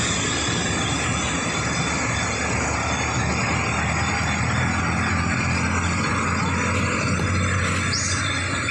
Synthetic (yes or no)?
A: no